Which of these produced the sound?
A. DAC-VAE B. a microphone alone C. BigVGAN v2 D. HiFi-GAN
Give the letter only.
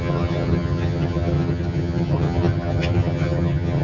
D